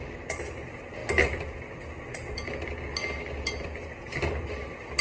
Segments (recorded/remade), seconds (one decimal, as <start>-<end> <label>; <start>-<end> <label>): 0.0-5.0 recorded